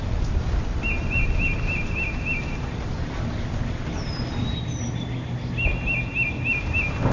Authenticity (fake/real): real